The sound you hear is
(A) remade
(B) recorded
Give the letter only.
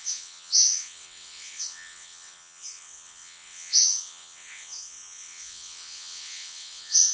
A